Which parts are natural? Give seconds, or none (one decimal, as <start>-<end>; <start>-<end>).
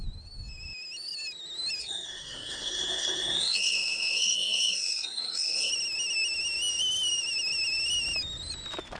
0.0-1.8; 5.7-9.0